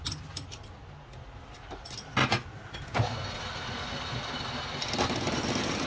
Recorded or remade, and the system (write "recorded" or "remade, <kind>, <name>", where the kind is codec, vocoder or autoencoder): recorded